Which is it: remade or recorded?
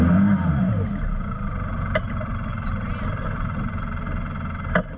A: recorded